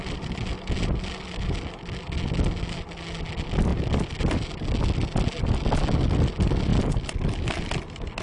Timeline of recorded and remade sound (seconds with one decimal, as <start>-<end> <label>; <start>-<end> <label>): 0.0-3.7 recorded; 3.7-4.5 remade; 4.5-8.2 recorded